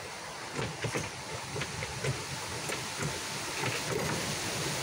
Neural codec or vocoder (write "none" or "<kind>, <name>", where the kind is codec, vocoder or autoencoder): none